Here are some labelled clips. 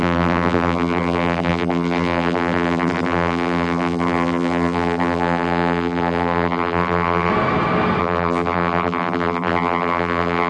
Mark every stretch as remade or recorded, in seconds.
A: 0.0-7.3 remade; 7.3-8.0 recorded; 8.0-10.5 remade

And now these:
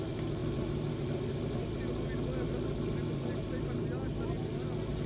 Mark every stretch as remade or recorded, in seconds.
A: 0.0-5.1 recorded

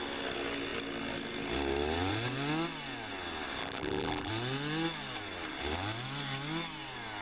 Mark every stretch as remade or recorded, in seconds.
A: 0.0-3.6 recorded; 3.6-4.3 remade; 4.3-7.2 recorded

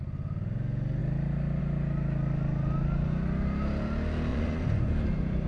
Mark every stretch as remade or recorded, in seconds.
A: 0.0-4.3 recorded; 4.3-4.9 remade; 4.9-5.5 recorded

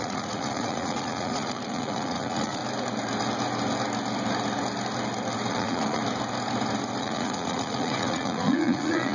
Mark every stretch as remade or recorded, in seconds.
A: 0.0-2.6 remade; 2.6-5.5 recorded; 5.5-6.0 remade; 6.0-7.0 recorded; 7.0-9.1 remade